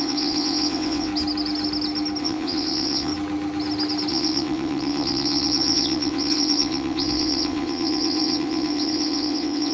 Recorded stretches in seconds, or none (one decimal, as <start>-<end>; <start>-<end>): 1.1-2.2; 3.1-4.1